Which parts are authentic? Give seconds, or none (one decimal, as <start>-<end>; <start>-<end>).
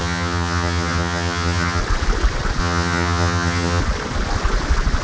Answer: 1.8-2.6; 3.8-5.0